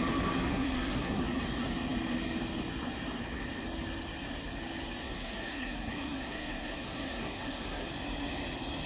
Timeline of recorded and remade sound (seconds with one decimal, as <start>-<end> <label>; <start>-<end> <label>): 0.0-0.5 recorded; 0.5-1.2 remade; 1.2-5.0 recorded; 5.0-7.9 remade; 7.9-8.9 recorded